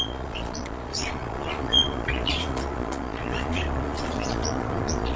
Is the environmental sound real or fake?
fake